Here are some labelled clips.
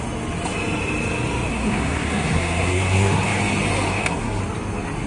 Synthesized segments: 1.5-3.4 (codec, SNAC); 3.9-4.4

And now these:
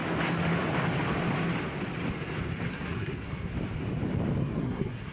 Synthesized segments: 2.7-3.5 (codec, SNAC); 4.4-5.1

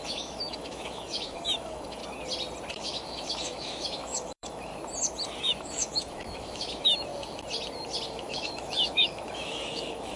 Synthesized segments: 0.0-2.0 (autoencoder, DAC-VAE); 2.7-4.7; 5.4-7.1; 8.1-10.2

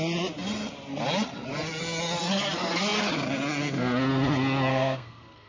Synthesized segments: 4.7-5.5 (codec, SNAC)

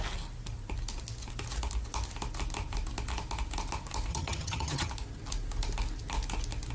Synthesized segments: 4.1-4.9 (vocoder, HiFi-GAN)

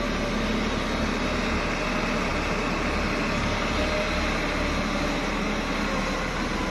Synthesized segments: none

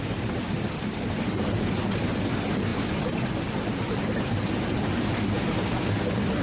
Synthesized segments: 2.7-5.0 (vocoder, BigVGAN v2)